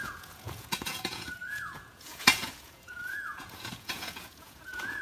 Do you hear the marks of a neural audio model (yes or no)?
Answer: yes